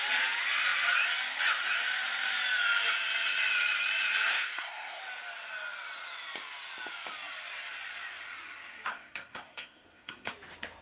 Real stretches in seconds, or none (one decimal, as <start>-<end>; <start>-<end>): 0.0-4.3; 5.0-8.9; 10.3-10.8